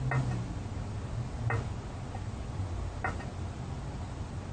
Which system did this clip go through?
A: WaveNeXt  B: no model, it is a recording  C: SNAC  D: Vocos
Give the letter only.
B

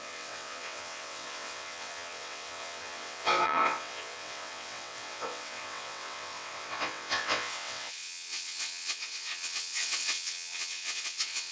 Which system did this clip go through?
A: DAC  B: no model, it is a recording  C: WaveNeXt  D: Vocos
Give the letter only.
C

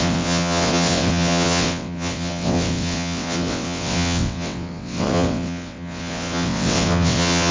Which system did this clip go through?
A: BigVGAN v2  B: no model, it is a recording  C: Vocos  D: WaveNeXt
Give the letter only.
D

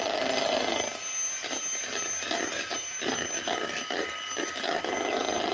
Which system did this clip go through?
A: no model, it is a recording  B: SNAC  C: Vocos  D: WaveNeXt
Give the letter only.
A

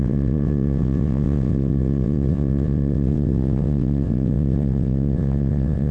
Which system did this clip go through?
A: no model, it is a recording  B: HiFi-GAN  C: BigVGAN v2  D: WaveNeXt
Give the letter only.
D